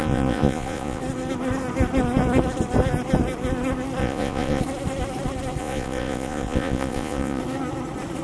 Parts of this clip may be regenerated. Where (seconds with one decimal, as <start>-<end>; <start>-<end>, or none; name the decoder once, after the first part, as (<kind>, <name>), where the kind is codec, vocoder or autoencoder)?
0.0-1.0 (vocoder, Vocos); 4.0-4.6; 5.6-7.4